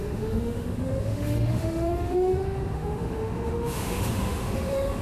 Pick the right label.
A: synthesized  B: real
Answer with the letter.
A